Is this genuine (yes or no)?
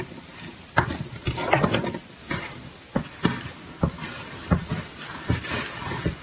no